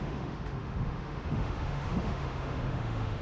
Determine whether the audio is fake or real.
fake